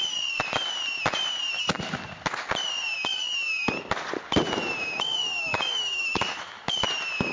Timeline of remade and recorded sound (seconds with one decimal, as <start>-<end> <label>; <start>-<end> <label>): 0.0-5.2 recorded; 5.2-6.6 remade; 6.6-7.3 recorded